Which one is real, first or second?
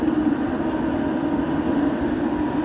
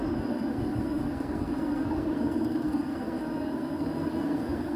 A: first